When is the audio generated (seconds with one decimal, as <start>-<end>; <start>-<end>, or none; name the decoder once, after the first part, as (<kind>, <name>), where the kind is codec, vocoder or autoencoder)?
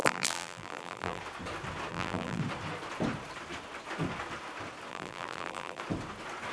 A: 0.0-1.2 (vocoder, BigVGAN v2); 1.9-2.4; 4.9-5.8